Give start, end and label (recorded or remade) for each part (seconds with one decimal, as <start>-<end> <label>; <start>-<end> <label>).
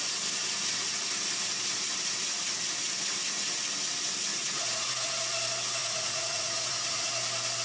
0.0-4.3 recorded; 4.3-5.1 remade; 5.1-5.8 recorded; 5.8-7.1 remade; 7.1-7.6 recorded